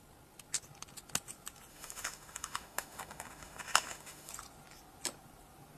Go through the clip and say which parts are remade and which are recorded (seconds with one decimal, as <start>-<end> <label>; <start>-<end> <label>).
0.0-1.7 recorded; 1.7-4.3 remade; 4.3-5.8 recorded